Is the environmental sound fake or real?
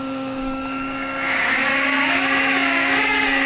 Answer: fake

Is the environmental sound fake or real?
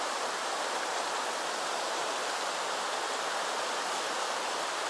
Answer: real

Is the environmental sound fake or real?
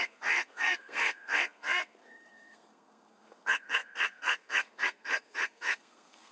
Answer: fake